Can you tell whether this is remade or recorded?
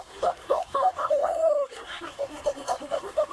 remade